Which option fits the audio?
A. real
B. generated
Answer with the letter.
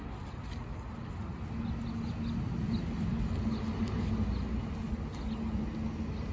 A